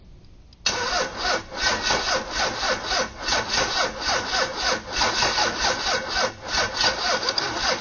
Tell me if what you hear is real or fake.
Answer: real